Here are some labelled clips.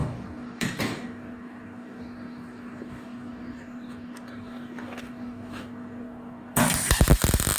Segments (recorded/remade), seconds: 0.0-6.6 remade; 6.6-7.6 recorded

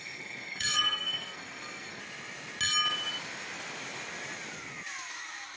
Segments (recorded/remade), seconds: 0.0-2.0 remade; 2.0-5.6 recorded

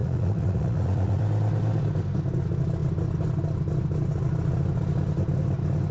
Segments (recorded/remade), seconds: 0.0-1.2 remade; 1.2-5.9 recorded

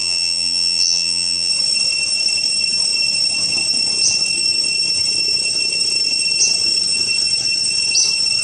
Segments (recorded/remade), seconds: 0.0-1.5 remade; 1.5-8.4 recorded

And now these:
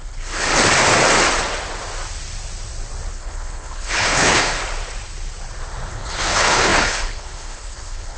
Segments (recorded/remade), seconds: 0.0-0.5 remade; 0.5-3.1 recorded; 3.1-4.6 remade; 4.6-5.9 recorded; 5.9-8.2 remade